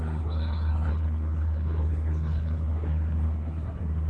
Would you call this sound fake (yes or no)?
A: yes